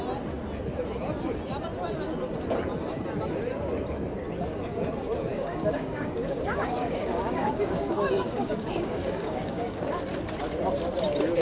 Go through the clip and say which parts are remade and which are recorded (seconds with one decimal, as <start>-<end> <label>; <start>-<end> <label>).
0.0-5.3 recorded; 5.3-9.8 remade; 9.8-11.4 recorded